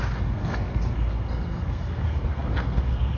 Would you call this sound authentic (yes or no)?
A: no